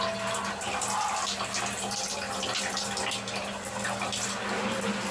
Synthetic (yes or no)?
no